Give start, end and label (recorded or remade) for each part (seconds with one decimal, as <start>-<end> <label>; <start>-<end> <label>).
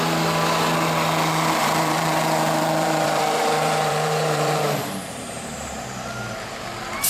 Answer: 0.0-1.6 recorded; 1.6-5.9 remade; 5.9-7.1 recorded